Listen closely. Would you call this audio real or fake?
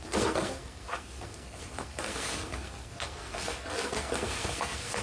fake